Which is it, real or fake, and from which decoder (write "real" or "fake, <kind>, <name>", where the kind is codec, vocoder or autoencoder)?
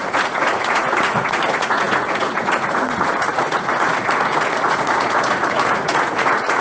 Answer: fake, vocoder, Vocos